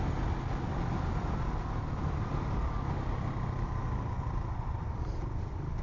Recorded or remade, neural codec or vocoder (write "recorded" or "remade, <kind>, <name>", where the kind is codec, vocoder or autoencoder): recorded